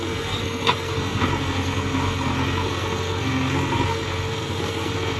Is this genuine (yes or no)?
no